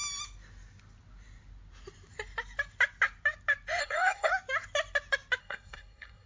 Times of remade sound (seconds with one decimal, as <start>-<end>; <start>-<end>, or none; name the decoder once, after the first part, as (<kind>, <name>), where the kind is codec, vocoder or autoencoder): 3.8-4.3 (codec, SNAC); 5.4-6.3